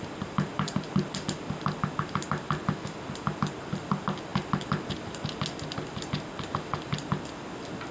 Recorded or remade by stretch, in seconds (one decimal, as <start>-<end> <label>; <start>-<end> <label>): 0.0-7.9 recorded